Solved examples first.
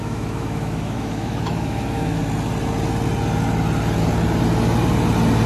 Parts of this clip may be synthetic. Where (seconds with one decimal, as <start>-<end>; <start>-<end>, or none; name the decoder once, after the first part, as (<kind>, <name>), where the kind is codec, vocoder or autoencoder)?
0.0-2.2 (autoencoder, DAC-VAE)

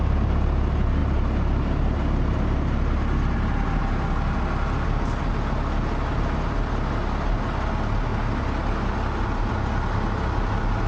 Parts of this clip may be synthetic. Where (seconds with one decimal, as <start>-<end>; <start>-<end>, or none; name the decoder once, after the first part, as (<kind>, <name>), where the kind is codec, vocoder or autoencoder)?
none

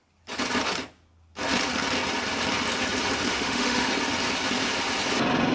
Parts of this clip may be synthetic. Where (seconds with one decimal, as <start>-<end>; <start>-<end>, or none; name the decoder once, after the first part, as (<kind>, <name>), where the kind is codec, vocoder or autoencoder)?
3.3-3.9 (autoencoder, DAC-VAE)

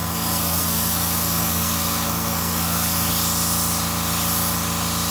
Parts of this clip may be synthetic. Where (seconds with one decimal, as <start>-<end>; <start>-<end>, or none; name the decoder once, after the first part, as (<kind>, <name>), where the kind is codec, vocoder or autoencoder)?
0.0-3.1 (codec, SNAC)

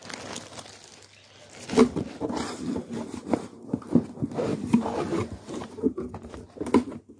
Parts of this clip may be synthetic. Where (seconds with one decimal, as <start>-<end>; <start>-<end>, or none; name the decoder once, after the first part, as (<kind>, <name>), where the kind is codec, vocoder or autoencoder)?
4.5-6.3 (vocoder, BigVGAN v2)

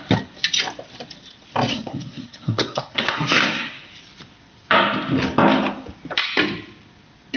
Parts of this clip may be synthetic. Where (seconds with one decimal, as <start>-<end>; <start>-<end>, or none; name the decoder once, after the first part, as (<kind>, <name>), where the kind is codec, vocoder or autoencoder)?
1.7-3.9 (codec, SNAC)

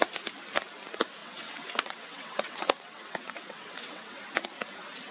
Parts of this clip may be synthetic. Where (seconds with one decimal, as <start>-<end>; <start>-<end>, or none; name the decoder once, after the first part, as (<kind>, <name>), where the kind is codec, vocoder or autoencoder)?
1.2-4.2 (vocoder, WaveNeXt)

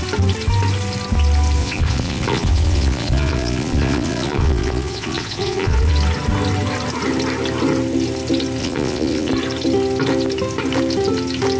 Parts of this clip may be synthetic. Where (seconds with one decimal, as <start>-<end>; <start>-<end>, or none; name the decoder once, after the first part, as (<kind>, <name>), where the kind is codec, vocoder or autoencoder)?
1.6-5.9 (vocoder, Vocos); 8.6-9.3